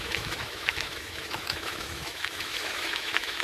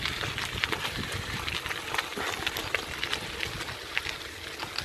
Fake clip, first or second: first